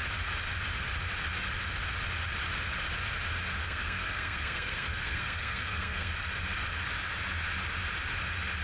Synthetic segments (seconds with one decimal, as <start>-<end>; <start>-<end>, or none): 3.6-6.1